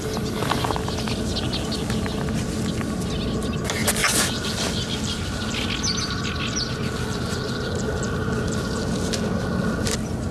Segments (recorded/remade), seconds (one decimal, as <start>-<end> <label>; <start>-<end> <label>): 0.0-10.3 recorded